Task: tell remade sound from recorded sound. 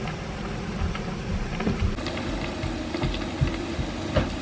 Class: recorded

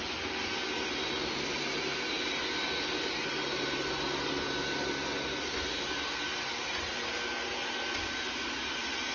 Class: recorded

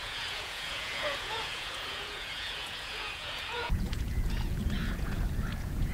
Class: remade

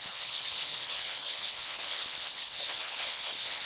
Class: remade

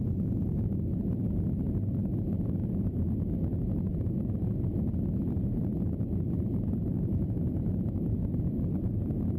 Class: recorded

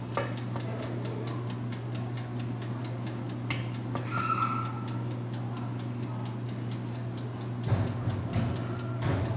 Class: recorded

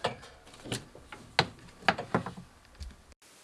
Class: recorded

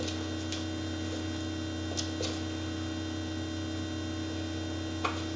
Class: recorded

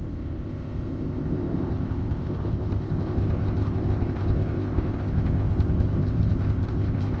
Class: remade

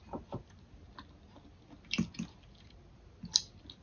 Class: recorded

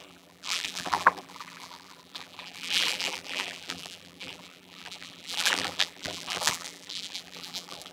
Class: remade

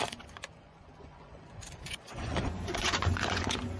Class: remade